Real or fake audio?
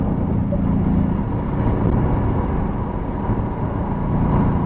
real